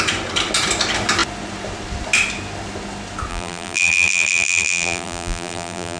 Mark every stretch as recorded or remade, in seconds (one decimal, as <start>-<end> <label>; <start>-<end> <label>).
0.0-3.3 recorded; 3.3-6.0 remade